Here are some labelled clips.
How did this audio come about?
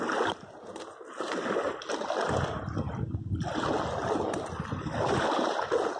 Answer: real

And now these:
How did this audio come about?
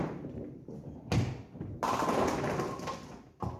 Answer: real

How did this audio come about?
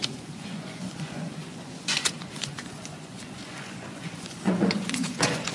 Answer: fake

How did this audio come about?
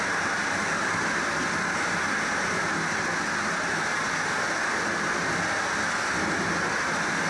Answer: real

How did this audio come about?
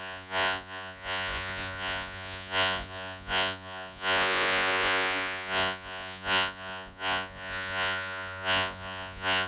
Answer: fake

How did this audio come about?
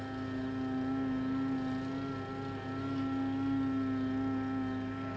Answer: real